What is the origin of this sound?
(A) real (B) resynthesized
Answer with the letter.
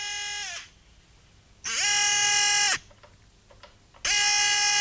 A